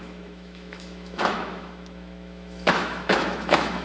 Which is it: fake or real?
fake